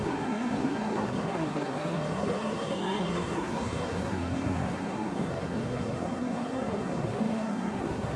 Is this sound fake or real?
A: fake